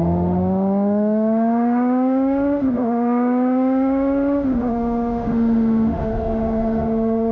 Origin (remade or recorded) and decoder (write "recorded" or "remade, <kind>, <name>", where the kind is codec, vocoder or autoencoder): remade, autoencoder, DAC-VAE